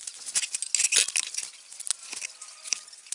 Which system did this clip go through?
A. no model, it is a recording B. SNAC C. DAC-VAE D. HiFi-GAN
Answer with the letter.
A